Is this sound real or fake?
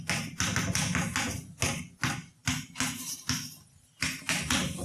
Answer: real